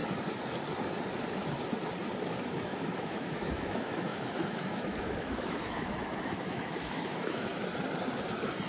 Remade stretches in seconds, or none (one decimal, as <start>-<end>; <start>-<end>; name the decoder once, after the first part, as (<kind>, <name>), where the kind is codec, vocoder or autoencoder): 2.2-7.5 (autoencoder, DAC-VAE)